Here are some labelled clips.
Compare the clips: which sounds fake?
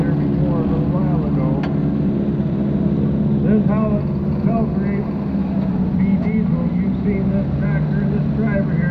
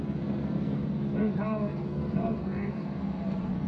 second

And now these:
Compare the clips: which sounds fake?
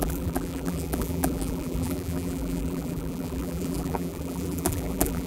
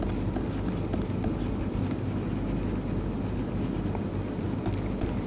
first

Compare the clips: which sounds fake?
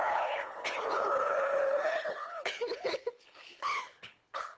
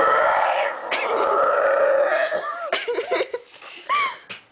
first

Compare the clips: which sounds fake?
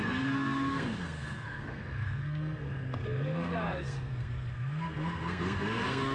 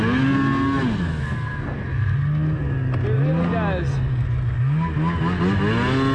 first